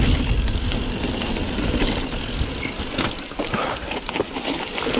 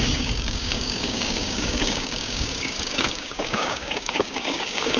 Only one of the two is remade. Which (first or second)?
second